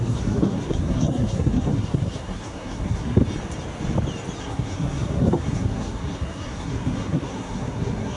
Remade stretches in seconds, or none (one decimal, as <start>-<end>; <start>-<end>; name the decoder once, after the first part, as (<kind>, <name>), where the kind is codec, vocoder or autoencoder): 0.0-3.2 (codec, SNAC); 4.4-8.2